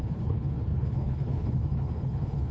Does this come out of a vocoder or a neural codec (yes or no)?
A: yes